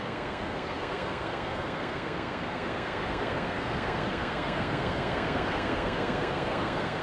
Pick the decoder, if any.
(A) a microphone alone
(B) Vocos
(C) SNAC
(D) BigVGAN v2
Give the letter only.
C